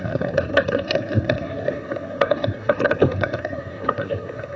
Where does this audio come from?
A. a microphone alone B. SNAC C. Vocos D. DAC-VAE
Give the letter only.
B